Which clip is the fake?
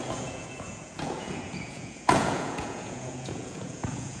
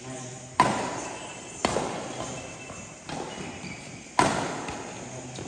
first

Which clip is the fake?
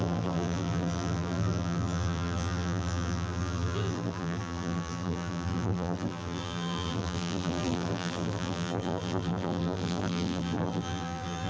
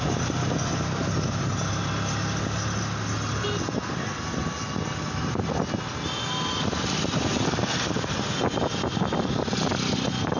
first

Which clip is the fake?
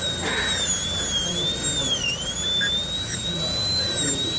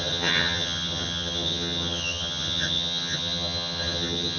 second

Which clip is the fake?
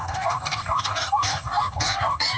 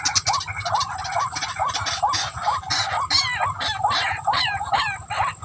first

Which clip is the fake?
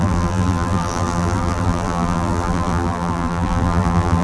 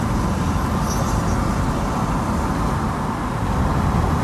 first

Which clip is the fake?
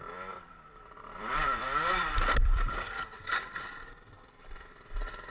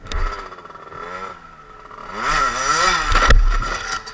first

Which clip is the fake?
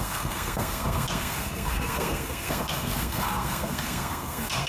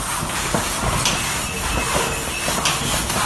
first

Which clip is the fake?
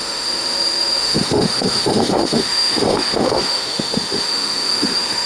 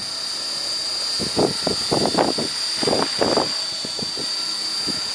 first